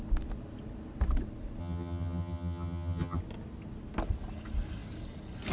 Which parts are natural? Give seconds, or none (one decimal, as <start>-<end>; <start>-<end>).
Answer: 0.0-1.6; 3.2-5.5